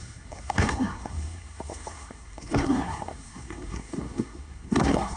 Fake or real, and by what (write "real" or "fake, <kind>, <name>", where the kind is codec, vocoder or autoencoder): fake, codec, SNAC